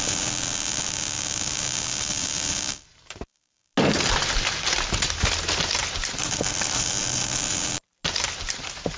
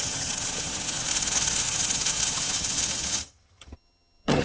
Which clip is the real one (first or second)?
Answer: first